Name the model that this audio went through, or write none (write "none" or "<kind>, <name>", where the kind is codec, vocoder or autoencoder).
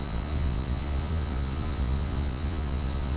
vocoder, Vocos